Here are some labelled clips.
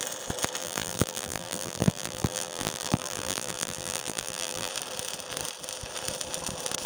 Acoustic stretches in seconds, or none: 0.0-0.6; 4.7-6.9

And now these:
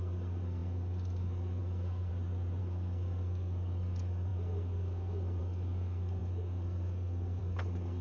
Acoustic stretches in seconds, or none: 2.1-2.6

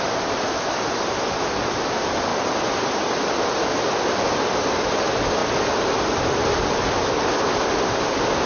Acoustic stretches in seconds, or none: 0.0-8.5

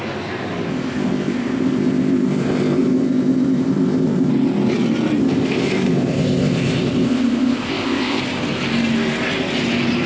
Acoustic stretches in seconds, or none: 0.0-0.7; 4.3-5.2; 8.2-10.1

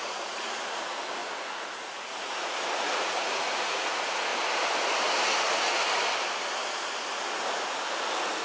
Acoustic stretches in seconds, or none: 4.3-7.6

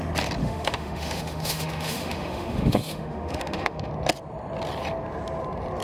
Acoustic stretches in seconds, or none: 0.0-0.4; 3.9-5.8

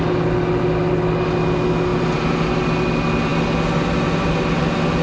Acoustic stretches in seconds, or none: 0.0-5.0

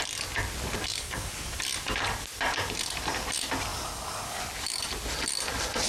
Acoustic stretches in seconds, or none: 0.0-0.9; 1.6-3.7; 4.4-5.9